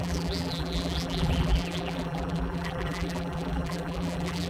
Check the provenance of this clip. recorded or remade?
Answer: remade